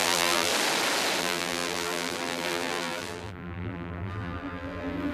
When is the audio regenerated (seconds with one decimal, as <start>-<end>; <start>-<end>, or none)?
0.0-0.5; 1.2-5.1